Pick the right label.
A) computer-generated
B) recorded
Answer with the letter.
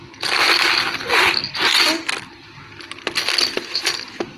B